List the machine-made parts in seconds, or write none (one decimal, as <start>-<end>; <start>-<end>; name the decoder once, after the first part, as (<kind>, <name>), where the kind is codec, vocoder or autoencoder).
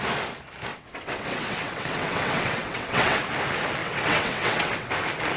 0.7-3.2 (vocoder, WaveNeXt); 3.8-4.9